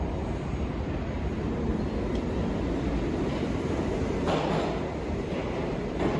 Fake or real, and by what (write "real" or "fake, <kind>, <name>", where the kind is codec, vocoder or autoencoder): real